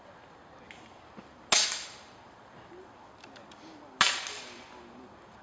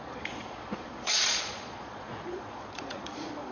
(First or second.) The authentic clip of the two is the first